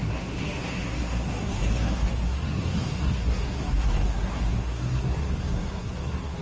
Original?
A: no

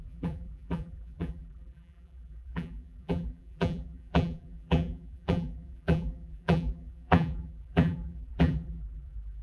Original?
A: no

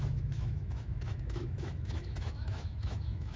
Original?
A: no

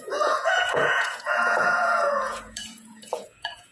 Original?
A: no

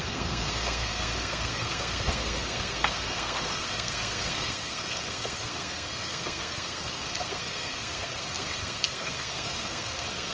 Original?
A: no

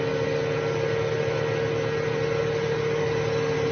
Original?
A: yes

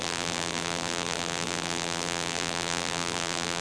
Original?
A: no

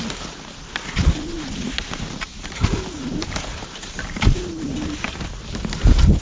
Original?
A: yes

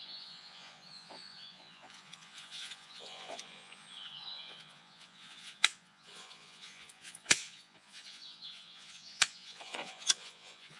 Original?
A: no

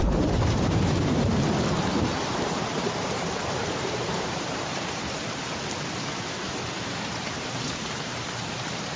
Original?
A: no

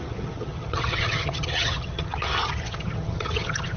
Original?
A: no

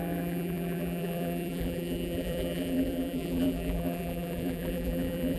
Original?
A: no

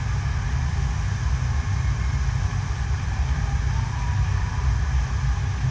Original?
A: yes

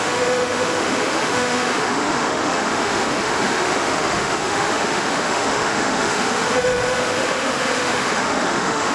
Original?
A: no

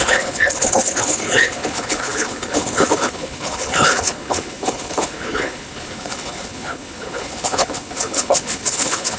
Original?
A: no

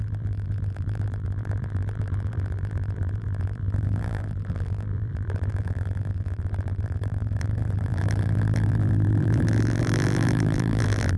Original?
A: no